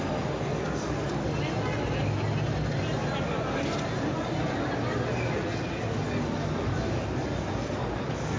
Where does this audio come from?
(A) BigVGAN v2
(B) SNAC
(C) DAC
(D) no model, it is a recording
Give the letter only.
D